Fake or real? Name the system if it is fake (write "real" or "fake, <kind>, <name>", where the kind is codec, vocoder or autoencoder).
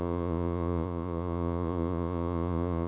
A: fake, vocoder, Vocos